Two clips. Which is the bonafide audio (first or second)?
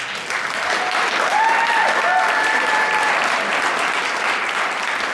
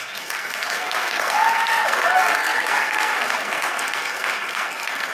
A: first